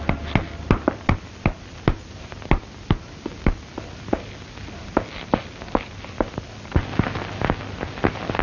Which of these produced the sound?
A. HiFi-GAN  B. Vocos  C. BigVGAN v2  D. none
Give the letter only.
D